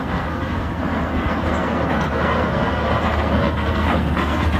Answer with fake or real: fake